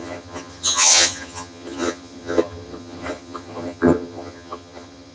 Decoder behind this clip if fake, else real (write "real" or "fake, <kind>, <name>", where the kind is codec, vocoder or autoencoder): fake, vocoder, HiFi-GAN